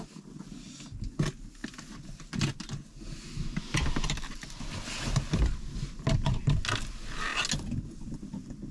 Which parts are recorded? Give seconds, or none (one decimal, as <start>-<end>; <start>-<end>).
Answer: 0.0-8.7

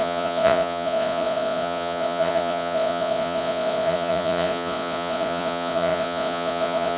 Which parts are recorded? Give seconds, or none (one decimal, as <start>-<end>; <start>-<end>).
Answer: none

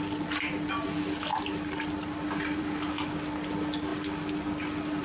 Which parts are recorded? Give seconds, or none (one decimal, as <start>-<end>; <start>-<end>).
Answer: 0.0-5.0

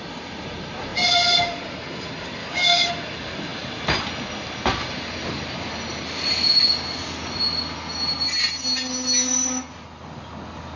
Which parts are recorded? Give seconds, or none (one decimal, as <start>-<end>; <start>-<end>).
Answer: 0.0-2.4; 2.9-10.8

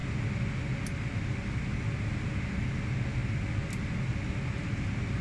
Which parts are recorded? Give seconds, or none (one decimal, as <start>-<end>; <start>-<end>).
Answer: 0.0-5.2

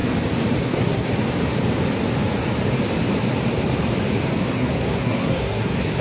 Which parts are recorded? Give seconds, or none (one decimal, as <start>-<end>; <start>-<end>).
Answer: 0.0-0.6; 1.1-4.5

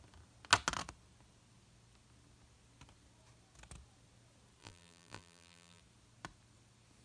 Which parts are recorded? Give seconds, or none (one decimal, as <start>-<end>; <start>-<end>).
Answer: 0.0-4.6; 5.8-7.0

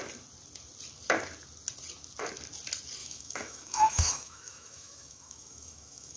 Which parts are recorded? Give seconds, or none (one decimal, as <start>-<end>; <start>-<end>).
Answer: 0.0-3.0